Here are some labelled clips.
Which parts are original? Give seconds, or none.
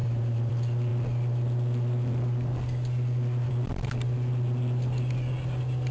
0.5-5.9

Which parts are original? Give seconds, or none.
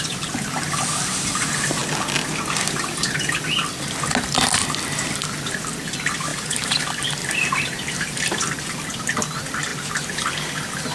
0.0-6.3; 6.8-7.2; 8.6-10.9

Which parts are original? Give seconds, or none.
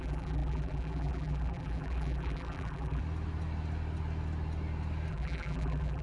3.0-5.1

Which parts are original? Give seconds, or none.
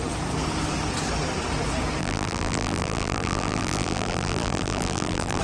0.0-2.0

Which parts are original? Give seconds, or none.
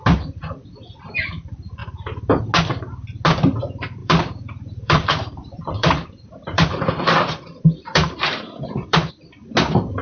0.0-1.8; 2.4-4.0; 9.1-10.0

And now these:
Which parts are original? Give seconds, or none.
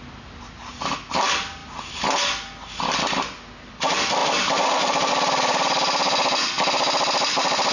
0.0-4.2; 5.1-7.7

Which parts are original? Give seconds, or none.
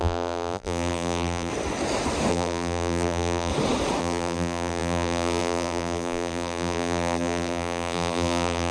1.5-2.3; 3.5-4.0